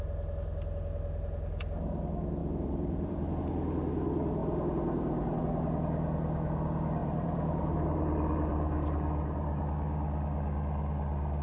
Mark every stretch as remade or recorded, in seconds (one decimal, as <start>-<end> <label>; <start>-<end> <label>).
0.0-2.4 recorded; 2.4-3.4 remade; 3.4-4.4 recorded; 4.4-5.4 remade; 5.4-7.0 recorded; 7.0-8.0 remade; 8.0-8.5 recorded; 8.5-9.6 remade; 9.6-11.4 recorded